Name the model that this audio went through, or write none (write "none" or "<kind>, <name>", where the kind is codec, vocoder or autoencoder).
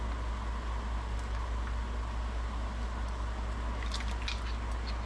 none